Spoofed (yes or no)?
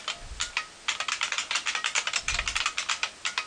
no